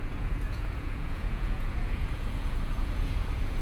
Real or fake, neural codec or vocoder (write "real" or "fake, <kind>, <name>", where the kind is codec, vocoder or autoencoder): fake, vocoder, Vocos